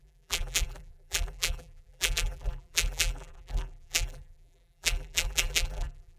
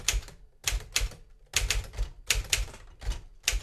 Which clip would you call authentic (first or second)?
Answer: second